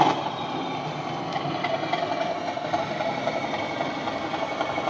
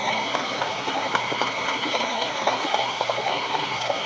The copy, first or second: second